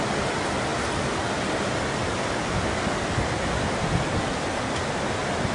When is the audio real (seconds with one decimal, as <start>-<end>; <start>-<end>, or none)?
0.0-5.5